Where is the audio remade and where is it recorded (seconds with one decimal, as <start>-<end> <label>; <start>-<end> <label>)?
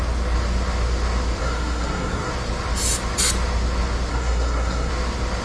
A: 0.0-1.4 recorded; 1.4-2.3 remade; 2.3-4.1 recorded; 4.1-4.9 remade; 4.9-5.4 recorded